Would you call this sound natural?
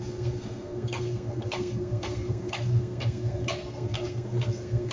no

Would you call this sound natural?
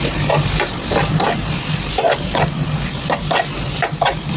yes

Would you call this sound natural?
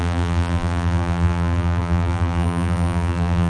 no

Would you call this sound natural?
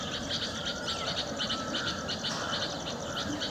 yes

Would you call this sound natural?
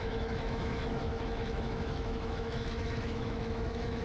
no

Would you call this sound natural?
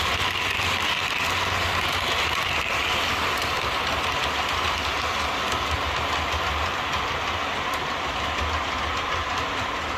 yes